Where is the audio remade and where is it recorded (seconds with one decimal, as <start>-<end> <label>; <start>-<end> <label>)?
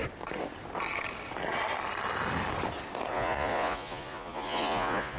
0.0-3.1 recorded; 3.1-5.2 remade